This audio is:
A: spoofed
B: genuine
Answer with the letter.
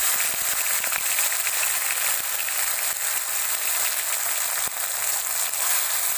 B